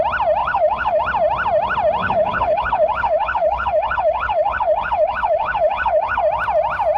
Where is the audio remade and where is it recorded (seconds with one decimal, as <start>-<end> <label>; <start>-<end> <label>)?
0.0-0.4 recorded; 0.4-1.0 remade; 1.0-2.0 recorded; 2.0-6.2 remade; 6.2-7.0 recorded